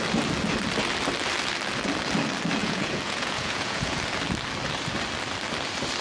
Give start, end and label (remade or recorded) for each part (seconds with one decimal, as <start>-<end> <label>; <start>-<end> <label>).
0.0-2.6 recorded; 2.6-4.0 remade; 4.0-6.0 recorded